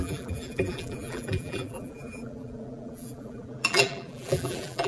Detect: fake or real fake